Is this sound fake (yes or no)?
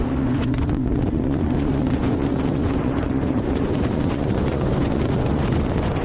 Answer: yes